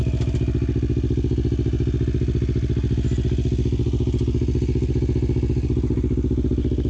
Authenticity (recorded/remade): recorded